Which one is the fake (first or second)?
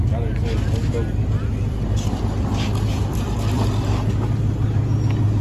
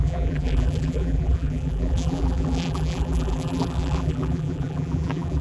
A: second